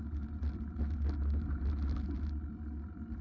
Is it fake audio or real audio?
real